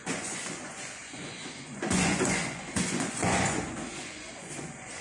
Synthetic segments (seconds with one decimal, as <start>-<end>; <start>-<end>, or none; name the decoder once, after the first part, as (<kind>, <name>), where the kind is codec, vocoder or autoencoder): 0.0-5.0 (vocoder, Vocos)